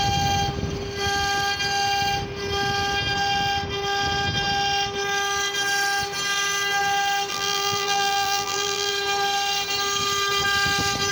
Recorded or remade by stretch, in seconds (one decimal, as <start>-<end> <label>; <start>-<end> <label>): 0.0-7.3 recorded; 7.3-8.9 remade; 8.9-11.1 recorded